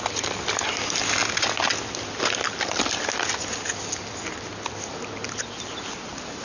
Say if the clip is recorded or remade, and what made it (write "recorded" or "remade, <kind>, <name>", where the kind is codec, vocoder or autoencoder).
recorded